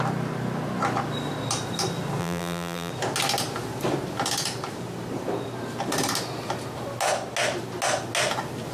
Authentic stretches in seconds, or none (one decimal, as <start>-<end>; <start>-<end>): 0.0-2.2; 2.9-8.7